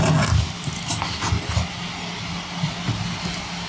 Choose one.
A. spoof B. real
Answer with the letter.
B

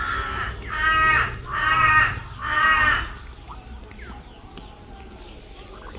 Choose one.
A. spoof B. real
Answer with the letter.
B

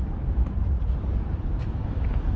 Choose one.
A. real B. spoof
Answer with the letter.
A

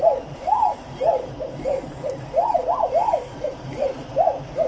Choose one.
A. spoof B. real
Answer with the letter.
B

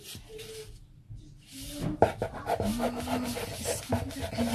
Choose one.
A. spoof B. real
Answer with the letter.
B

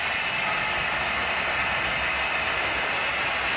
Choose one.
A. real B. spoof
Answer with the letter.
A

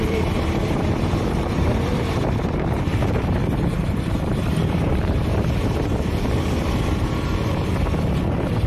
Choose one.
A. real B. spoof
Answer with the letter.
B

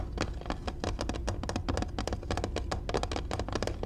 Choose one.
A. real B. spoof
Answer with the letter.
A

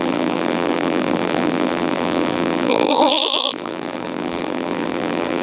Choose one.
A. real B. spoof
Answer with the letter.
B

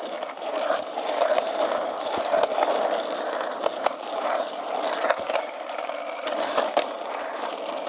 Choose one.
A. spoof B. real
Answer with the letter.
A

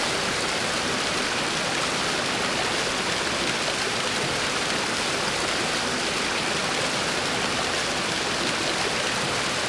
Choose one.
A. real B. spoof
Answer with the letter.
A